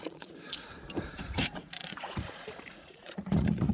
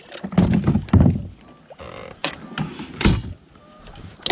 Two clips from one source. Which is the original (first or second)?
second